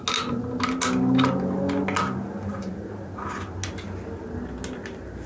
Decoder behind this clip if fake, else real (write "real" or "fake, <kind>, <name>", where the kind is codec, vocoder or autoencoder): real